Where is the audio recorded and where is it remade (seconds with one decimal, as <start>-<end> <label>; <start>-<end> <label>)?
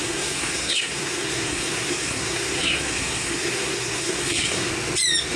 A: 0.0-4.7 remade; 4.7-5.4 recorded